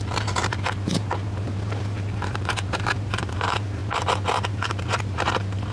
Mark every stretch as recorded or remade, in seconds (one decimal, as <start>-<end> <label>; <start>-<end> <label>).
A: 0.0-3.8 remade; 3.8-4.5 recorded; 4.5-5.7 remade